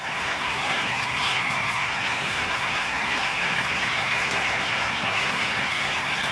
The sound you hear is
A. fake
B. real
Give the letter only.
A